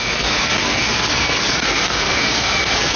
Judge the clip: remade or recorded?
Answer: remade